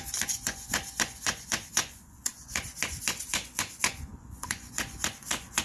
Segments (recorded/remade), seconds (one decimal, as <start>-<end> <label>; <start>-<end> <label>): 0.0-5.6 remade